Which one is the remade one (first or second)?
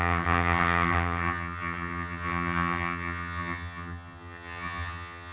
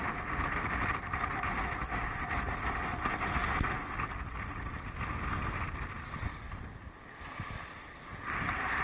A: first